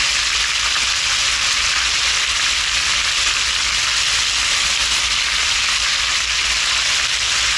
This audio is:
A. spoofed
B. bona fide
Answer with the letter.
B